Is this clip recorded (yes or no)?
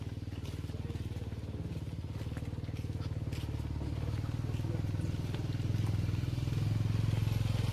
yes